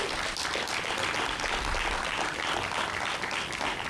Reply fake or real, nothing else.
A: real